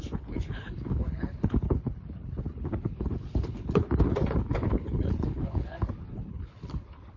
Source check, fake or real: fake